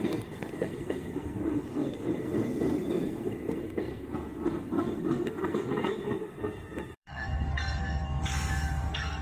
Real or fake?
fake